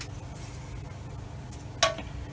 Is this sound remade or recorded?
recorded